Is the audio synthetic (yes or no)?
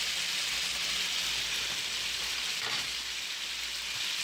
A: no